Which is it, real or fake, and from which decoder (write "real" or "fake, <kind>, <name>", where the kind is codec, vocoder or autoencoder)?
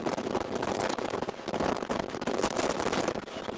real